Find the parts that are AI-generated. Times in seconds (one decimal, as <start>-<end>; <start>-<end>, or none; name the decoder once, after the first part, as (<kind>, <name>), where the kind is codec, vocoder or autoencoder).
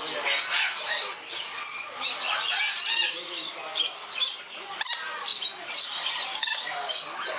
6.3-7.0 (codec, DAC)